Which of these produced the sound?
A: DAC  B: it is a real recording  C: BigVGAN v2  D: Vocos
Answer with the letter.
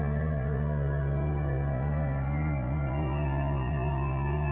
D